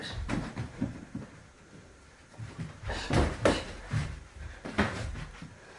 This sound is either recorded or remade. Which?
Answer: remade